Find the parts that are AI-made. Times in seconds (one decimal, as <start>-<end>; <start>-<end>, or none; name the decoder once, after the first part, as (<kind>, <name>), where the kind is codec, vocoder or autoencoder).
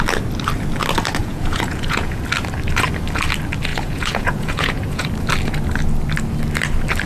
1.2-2.2 (vocoder, Vocos); 3.7-5.1